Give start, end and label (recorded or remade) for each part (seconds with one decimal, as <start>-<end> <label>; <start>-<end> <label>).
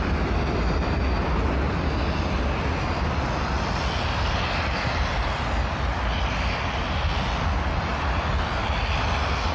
0.0-9.5 recorded